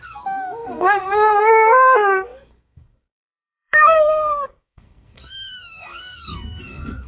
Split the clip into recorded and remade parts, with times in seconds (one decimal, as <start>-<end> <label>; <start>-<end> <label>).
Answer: 0.0-7.1 remade